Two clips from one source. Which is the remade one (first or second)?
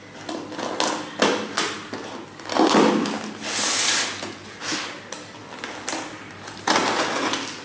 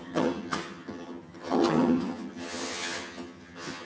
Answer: second